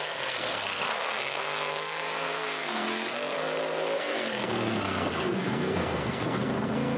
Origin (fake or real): fake